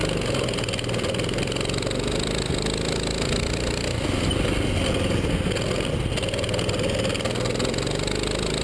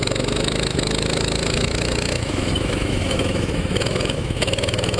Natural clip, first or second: first